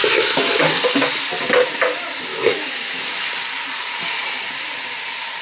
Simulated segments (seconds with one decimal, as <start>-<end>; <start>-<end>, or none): 0.0-0.6; 2.3-3.3